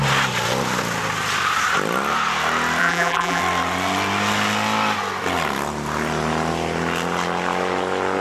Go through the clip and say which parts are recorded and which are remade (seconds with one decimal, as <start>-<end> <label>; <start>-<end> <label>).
0.0-2.8 recorded; 2.8-3.4 remade; 3.4-8.2 recorded